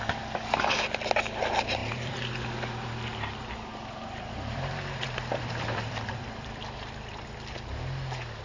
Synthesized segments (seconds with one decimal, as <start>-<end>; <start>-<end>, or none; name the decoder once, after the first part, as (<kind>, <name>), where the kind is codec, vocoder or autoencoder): 1.8-2.9 (vocoder, BigVGAN v2); 3.7-7.3